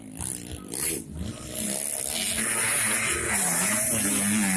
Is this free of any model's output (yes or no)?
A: yes